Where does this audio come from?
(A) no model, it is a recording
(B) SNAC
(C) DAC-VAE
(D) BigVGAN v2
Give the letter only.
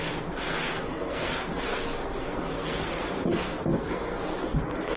B